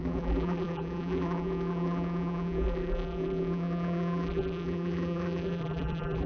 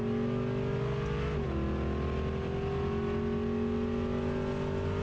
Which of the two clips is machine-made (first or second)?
first